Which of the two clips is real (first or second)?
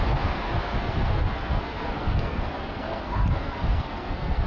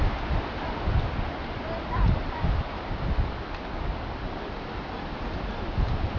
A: second